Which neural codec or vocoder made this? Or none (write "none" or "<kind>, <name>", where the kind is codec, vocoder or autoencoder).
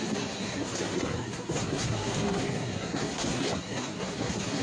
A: codec, SNAC